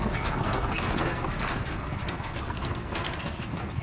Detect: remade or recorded remade